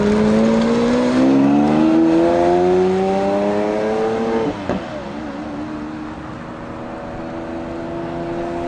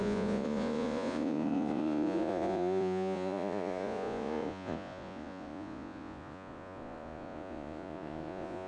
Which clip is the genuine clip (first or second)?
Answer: first